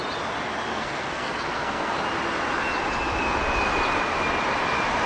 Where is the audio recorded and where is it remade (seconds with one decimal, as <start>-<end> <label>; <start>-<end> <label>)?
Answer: 0.0-0.7 recorded; 0.7-2.0 remade; 2.0-5.1 recorded